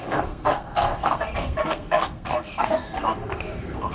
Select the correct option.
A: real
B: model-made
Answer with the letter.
B